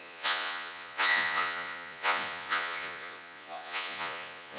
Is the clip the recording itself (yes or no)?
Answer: no